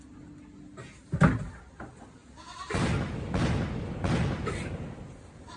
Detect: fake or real real